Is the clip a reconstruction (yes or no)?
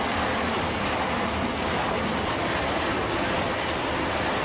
no